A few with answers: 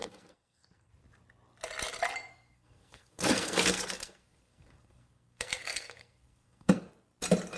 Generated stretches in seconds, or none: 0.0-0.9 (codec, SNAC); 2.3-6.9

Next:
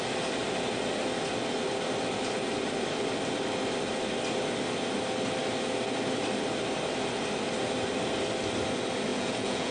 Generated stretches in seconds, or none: 9.1-9.7 (vocoder, Vocos)

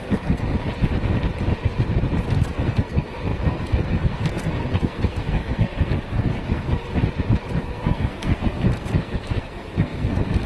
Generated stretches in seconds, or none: 0.0-0.5 (codec, SNAC); 2.5-6.9; 7.6-10.5

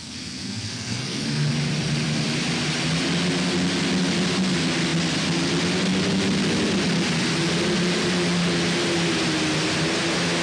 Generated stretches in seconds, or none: 0.0-1.5 (codec, SNAC)